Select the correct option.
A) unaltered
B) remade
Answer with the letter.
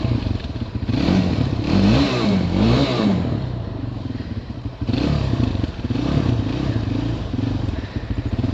B